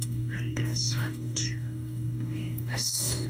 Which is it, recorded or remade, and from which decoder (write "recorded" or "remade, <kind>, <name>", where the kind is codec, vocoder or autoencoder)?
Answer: remade, codec, DAC